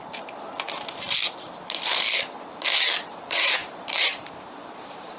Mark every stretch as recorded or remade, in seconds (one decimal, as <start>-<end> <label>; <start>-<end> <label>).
0.0-3.1 recorded; 3.1-5.2 remade